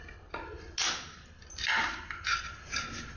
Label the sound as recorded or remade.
recorded